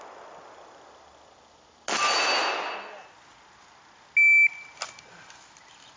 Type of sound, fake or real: real